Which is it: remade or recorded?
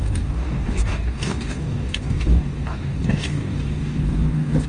remade